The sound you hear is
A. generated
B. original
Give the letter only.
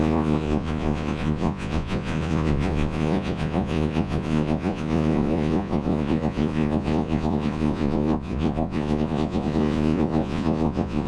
A